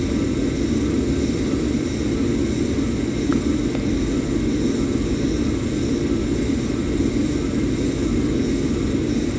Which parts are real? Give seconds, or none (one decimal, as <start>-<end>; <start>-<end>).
0.0-9.4